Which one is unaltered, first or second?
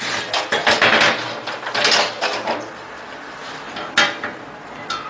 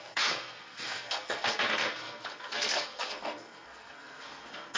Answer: first